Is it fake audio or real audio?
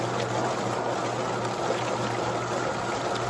real